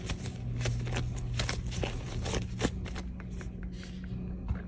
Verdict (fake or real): real